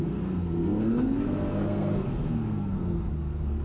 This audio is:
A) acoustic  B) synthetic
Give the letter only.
B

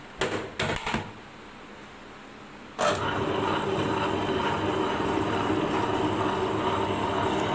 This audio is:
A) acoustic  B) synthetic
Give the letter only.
A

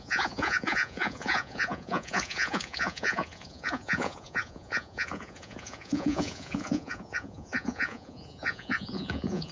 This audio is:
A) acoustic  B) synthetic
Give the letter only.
B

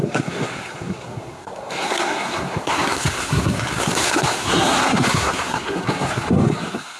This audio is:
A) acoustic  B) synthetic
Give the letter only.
B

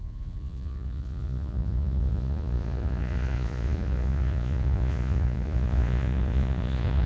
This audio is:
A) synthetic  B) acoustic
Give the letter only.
A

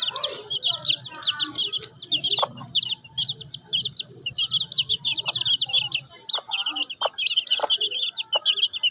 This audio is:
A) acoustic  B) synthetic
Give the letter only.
A